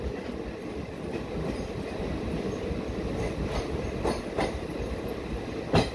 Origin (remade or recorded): recorded